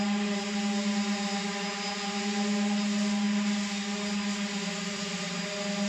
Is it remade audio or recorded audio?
recorded